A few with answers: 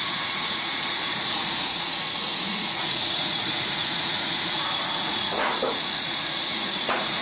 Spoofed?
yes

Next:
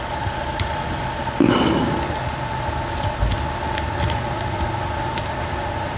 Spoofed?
no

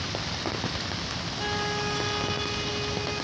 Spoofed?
no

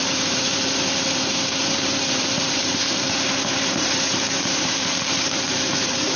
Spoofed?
yes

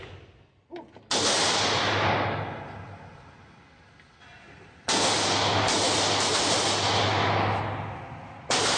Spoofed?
no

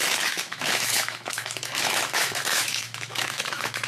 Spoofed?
yes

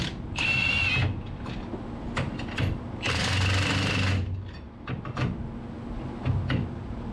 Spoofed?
no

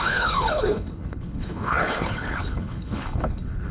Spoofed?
yes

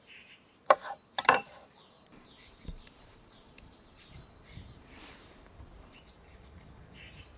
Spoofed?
yes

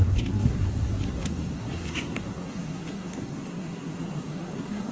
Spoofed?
yes